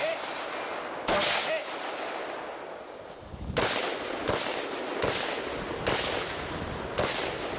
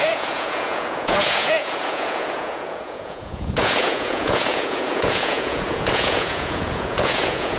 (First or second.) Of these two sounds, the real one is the first